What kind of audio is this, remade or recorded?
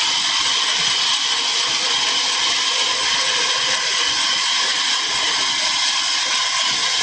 recorded